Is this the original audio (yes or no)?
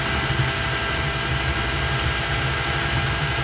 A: yes